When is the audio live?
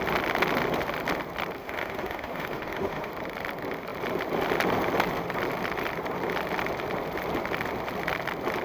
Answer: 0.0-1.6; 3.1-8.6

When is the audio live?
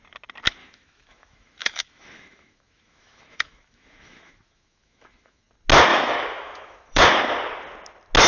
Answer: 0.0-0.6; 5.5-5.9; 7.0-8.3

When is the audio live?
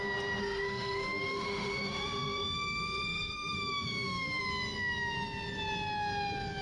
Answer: 0.0-0.4; 4.4-6.6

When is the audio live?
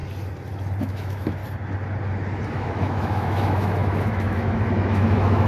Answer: 0.0-0.8; 1.4-2.5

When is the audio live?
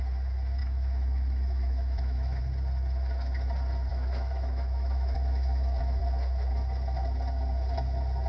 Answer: 0.0-0.6; 2.4-3.9; 6.0-8.3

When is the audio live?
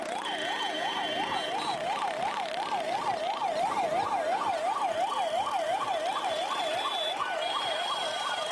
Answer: 0.0-8.5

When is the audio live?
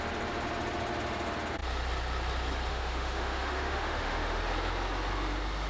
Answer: 0.0-2.7; 4.4-5.7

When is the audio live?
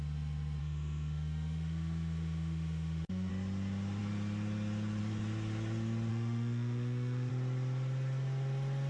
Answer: 0.0-0.6; 3.3-6.1; 7.3-8.9